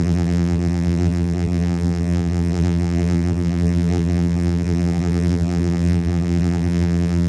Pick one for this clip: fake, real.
fake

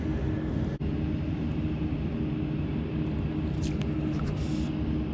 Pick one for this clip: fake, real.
real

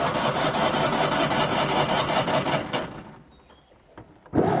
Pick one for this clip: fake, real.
real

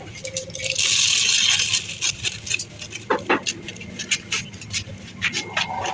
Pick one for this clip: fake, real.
real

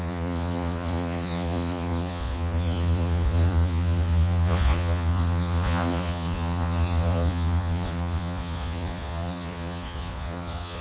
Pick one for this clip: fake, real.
fake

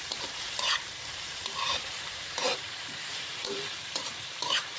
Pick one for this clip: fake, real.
fake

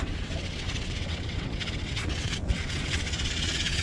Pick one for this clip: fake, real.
fake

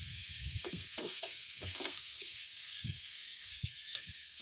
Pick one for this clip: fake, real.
fake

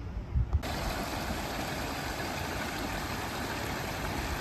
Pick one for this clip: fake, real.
real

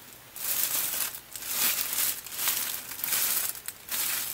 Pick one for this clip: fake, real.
real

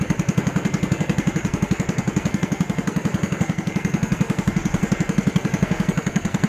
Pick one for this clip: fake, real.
fake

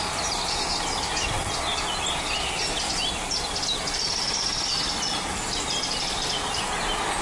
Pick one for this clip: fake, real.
real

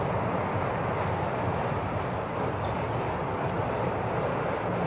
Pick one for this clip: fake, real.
fake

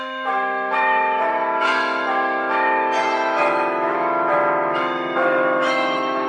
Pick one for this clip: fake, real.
fake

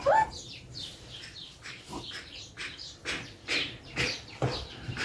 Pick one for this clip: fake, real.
fake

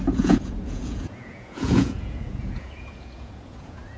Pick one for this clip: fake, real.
fake